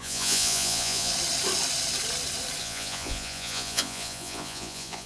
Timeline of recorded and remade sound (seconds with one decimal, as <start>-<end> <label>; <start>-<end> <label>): 0.0-1.1 remade; 1.1-2.6 recorded; 2.6-5.1 remade